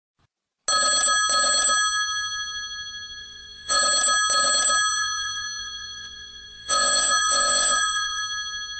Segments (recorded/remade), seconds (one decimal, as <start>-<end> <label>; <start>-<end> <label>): 0.0-3.2 recorded; 3.2-3.8 remade; 3.8-4.9 recorded; 4.9-8.2 remade; 8.2-8.8 recorded